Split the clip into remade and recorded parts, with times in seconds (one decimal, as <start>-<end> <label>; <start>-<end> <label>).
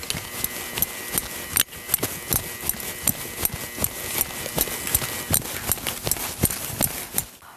0.0-7.6 recorded